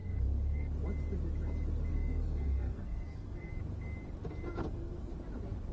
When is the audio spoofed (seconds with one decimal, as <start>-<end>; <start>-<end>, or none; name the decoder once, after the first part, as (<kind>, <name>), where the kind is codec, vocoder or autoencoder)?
0.0-0.7 (codec, SNAC); 1.9-3.5; 4.6-5.1